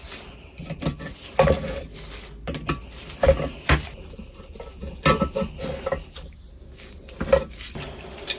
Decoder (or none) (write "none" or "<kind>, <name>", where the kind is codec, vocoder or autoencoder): none